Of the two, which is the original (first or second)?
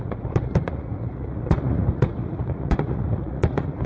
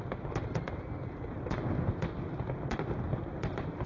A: second